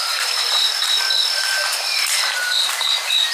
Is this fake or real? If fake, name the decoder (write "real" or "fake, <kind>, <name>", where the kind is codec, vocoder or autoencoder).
fake, vocoder, BigVGAN v2